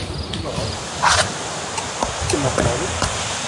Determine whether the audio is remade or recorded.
recorded